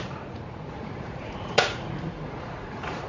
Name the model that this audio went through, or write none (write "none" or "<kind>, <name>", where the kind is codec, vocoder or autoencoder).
vocoder, Vocos